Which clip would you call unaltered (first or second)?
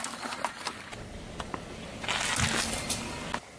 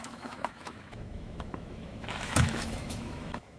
first